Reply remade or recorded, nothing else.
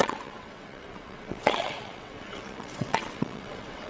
remade